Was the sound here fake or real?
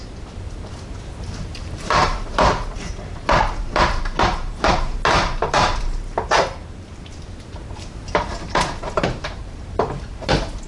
fake